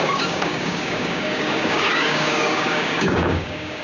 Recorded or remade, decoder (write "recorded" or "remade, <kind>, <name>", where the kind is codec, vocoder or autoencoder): remade, codec, DAC